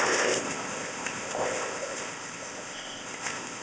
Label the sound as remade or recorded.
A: remade